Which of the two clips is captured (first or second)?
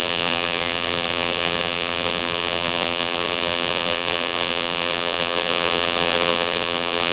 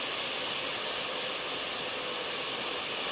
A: second